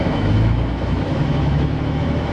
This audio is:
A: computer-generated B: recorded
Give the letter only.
A